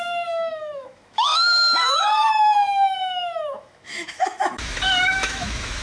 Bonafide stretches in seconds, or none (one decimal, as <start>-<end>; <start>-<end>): none